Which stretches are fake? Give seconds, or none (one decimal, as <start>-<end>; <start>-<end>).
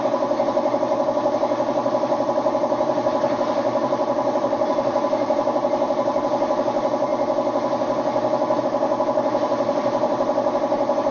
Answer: 0.0-7.1; 8.6-11.1